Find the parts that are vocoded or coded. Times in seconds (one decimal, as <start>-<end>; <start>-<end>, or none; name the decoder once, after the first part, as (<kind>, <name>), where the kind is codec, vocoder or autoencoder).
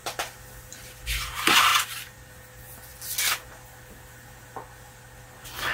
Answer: 1.7-2.3 (vocoder, BigVGAN v2)